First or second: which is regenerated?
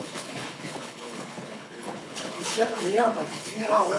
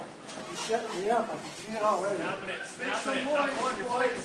first